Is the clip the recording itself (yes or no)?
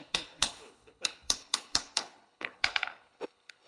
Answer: no